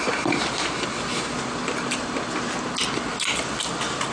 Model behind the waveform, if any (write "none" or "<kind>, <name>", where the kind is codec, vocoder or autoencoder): none